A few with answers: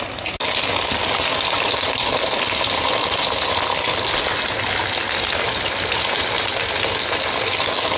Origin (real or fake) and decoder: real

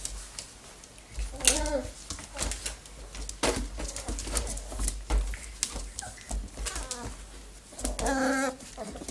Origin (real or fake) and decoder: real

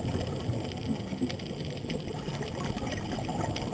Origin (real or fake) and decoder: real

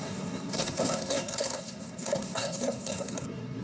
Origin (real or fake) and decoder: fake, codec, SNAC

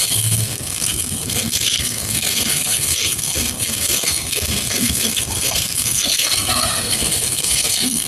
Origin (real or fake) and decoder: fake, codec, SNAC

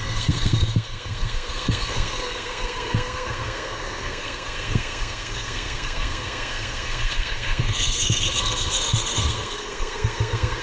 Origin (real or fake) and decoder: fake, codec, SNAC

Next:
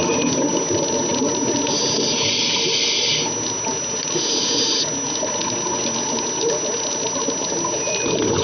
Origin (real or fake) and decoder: real